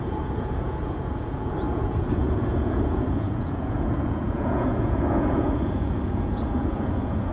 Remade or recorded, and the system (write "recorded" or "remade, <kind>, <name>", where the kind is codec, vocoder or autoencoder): remade, vocoder, Vocos